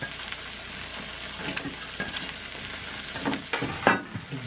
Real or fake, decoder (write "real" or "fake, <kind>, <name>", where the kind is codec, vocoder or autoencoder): real